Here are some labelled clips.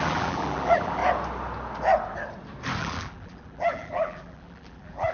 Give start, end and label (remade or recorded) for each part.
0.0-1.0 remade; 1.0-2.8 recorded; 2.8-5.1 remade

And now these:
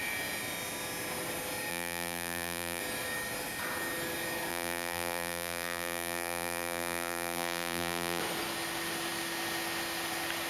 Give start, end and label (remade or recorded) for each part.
0.0-1.7 recorded; 1.7-2.8 remade; 2.8-4.5 recorded; 4.5-8.2 remade; 8.2-10.5 recorded

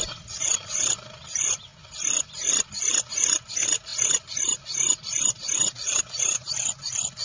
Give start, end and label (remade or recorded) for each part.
0.0-1.7 remade; 1.7-3.1 recorded; 3.1-7.2 remade